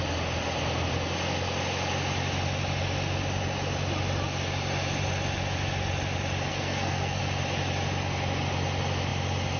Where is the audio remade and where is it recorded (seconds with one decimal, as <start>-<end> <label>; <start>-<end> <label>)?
0.0-6.5 recorded; 6.5-7.2 remade; 7.2-9.6 recorded